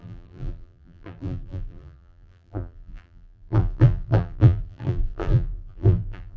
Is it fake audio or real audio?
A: fake